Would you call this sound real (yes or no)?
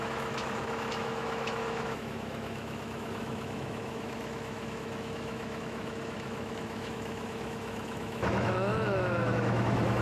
no